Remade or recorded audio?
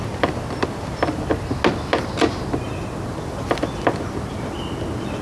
recorded